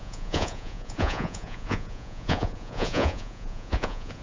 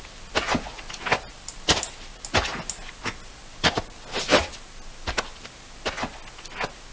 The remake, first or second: first